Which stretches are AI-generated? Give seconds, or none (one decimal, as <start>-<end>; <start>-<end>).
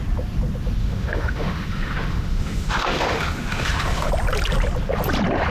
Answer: 0.8-4.1